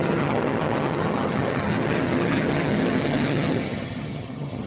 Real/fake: fake